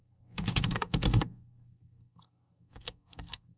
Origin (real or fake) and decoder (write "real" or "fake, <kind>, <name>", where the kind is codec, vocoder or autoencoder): fake, codec, SNAC